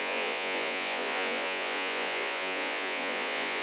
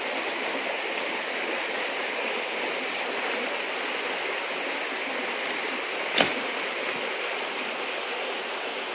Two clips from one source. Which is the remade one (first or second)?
first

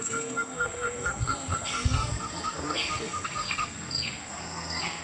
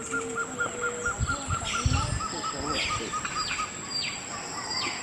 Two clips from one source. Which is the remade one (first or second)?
first